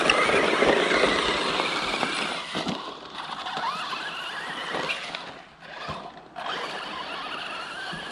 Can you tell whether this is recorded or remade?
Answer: recorded